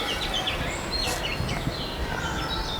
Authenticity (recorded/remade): recorded